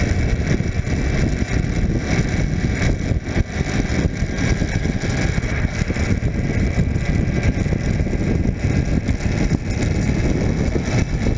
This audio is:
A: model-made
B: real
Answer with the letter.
B